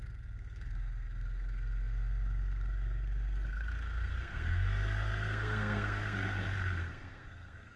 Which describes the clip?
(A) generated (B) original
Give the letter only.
A